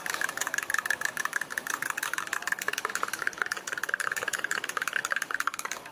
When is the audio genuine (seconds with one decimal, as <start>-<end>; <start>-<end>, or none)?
none

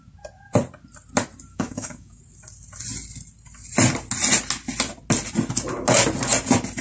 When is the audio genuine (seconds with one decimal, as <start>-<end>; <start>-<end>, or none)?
0.0-1.5; 2.2-6.8

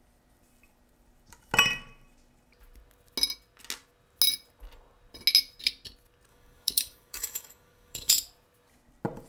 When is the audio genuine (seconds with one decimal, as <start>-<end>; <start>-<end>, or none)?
0.0-6.3; 8.1-9.3

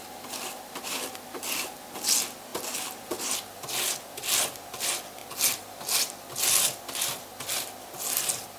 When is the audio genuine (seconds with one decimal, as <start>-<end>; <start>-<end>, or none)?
0.0-8.6

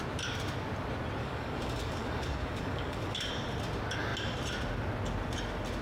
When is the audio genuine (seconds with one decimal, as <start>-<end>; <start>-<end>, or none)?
0.0-1.2; 3.3-5.8